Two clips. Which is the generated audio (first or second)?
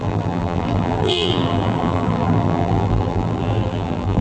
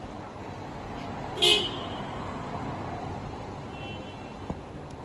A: first